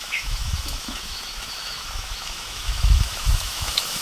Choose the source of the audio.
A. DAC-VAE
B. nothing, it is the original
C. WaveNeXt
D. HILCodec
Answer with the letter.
A